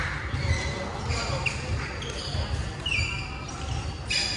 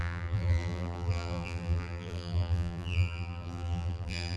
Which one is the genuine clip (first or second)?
first